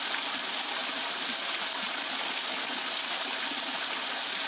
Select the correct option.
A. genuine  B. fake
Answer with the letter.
A